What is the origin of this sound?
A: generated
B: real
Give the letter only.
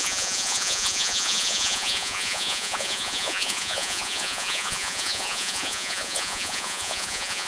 A